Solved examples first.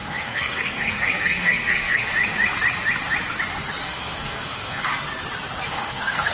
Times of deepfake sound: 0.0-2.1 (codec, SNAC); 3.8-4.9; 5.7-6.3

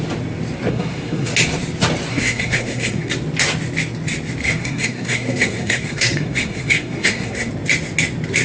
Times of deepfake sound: 0.7-1.3 (codec, SNAC); 2.1-3.1; 4.4-7.5

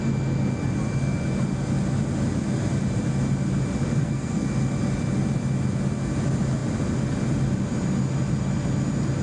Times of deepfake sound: 4.0-4.5 (codec, SNAC)

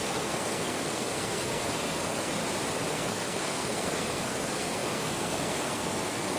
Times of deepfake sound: 0.0-2.4 (codec, SNAC); 2.9-6.4

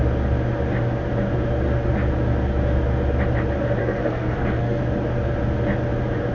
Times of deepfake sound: 3.8-4.8 (codec, SNAC)

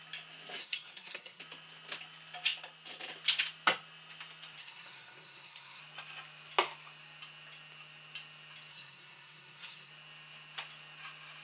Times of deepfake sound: 0.6-1.4 (codec, SNAC); 4.6-5.8; 8.7-9.9